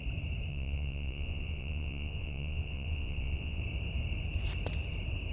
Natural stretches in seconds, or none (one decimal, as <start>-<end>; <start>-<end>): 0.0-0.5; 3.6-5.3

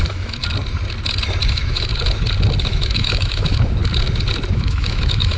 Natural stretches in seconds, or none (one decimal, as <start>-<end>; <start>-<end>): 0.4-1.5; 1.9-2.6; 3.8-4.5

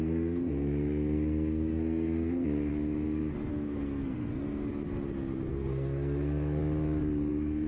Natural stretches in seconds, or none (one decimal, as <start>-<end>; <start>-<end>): 2.7-3.5; 4.6-5.5; 6.6-7.3

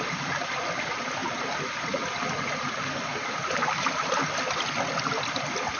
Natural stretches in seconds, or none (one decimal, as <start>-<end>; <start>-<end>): 0.0-5.8